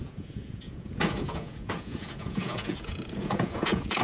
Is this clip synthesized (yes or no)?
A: yes